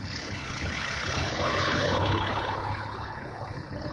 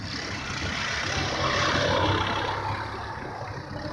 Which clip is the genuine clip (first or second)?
second